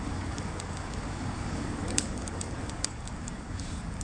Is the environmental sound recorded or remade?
remade